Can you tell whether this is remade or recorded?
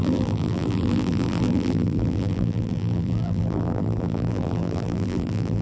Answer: remade